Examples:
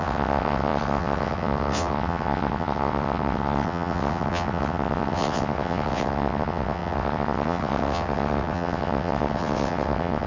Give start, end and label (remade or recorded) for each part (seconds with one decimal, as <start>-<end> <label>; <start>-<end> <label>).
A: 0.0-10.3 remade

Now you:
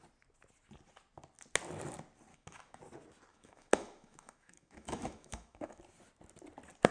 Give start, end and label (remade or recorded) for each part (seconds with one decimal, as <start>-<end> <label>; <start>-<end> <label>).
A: 0.0-2.3 recorded; 2.3-2.8 remade; 2.8-3.3 recorded; 3.3-5.8 remade; 5.8-6.9 recorded

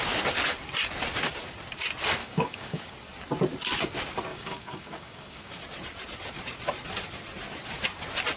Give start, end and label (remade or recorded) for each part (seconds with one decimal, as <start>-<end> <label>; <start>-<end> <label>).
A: 0.0-2.2 recorded; 2.2-2.9 remade; 2.9-4.3 recorded; 4.3-5.6 remade; 5.6-8.4 recorded

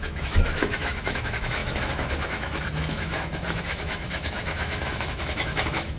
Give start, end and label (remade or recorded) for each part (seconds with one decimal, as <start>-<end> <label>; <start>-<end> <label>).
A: 0.0-6.0 remade

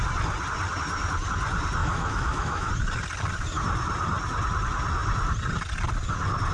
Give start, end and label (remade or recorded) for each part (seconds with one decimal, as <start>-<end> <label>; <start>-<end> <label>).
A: 0.0-1.8 recorded; 1.8-2.7 remade; 2.7-6.5 recorded